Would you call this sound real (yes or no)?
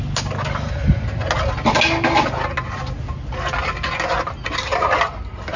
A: yes